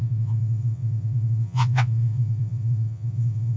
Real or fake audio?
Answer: fake